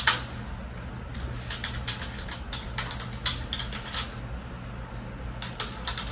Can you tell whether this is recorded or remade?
recorded